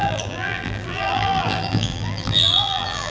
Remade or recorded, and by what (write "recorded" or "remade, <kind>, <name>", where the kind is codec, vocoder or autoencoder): remade, vocoder, BigVGAN v2